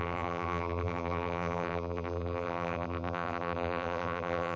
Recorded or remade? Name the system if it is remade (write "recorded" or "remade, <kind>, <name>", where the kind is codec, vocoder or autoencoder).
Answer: remade, vocoder, BigVGAN v2